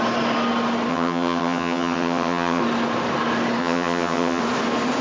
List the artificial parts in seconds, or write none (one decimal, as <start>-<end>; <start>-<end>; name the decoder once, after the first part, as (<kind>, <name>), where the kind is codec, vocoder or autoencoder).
0.9-2.6 (vocoder, HiFi-GAN); 3.6-4.4